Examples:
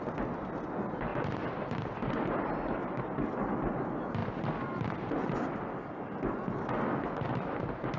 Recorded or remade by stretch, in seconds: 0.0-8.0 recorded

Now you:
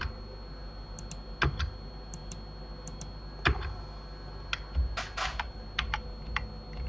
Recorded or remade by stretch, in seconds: 0.0-6.9 recorded